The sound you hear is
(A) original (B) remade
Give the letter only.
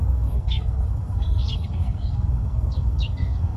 B